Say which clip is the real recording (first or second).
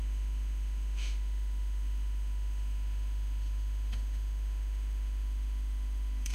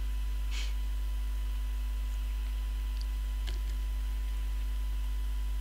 second